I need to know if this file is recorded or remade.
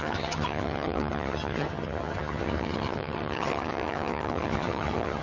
remade